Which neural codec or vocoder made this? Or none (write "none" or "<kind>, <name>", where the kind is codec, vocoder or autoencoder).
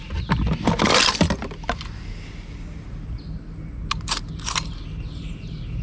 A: none